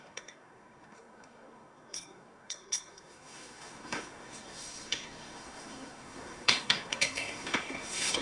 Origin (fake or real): fake